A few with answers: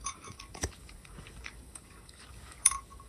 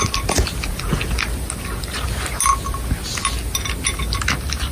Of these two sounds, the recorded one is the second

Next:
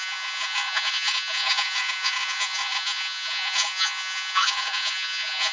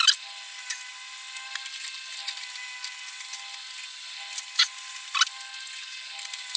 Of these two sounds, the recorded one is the second